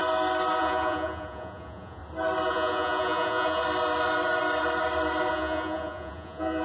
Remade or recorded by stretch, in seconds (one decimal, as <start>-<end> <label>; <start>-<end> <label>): 0.0-0.6 recorded; 0.6-2.0 remade; 2.0-2.5 recorded; 2.5-3.6 remade; 3.6-5.3 recorded; 5.3-6.6 remade

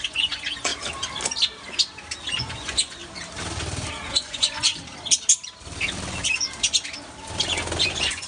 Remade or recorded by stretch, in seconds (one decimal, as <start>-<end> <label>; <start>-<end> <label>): 0.0-0.7 remade; 0.7-2.4 recorded; 2.4-3.0 remade; 3.0-4.1 recorded; 4.1-4.7 remade; 4.7-7.8 recorded; 7.8-8.3 remade

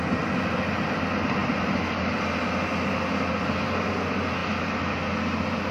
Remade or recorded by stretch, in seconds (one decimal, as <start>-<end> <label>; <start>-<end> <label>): 0.0-5.7 recorded

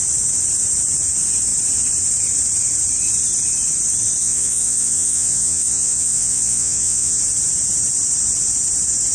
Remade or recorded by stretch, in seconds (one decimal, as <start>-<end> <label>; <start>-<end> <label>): 0.0-4.2 recorded; 4.2-7.2 remade; 7.2-9.1 recorded

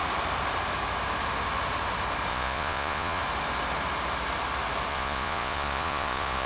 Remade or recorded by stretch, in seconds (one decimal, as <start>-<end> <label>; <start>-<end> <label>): 0.0-2.3 recorded; 2.3-3.2 remade; 3.2-4.9 recorded; 4.9-6.5 remade